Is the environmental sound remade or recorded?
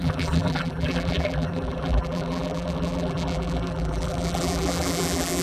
remade